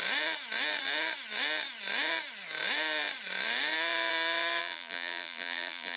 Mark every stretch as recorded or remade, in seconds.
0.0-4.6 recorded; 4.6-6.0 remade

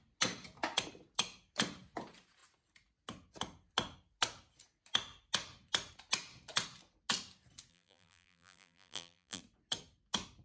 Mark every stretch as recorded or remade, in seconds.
0.0-7.7 recorded; 7.7-9.4 remade; 9.4-10.4 recorded

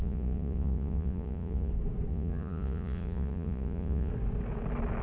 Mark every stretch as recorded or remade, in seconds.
0.0-1.7 remade; 1.7-2.1 recorded; 2.1-4.1 remade; 4.1-5.0 recorded

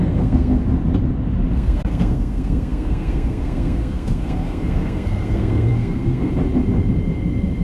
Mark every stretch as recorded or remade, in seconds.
0.0-0.6 remade; 0.6-1.5 recorded; 1.5-6.3 remade; 6.3-7.6 recorded

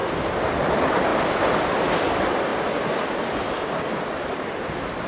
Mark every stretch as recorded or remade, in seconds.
0.0-0.5 recorded; 0.5-1.1 remade; 1.1-1.7 recorded; 1.7-5.1 remade

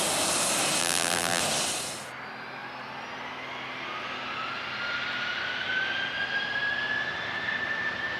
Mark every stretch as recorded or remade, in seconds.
0.0-0.8 recorded; 0.8-1.4 remade; 1.4-8.2 recorded